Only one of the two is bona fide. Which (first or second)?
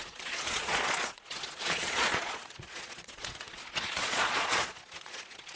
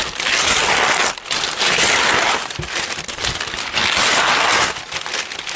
second